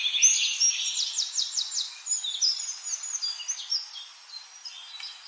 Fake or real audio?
real